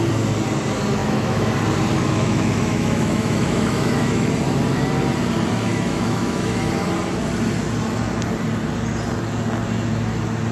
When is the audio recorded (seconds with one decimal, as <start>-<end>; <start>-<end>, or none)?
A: 0.0-1.0; 1.5-1.9; 4.3-5.7; 6.7-10.5